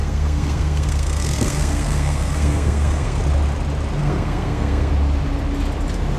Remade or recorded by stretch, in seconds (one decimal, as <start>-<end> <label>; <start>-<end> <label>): 0.0-3.2 remade; 3.2-4.0 recorded; 4.0-4.9 remade; 4.9-6.2 recorded

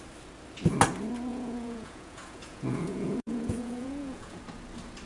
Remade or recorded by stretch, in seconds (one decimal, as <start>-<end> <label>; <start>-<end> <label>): 0.0-1.3 recorded; 1.3-4.4 remade; 4.4-5.1 recorded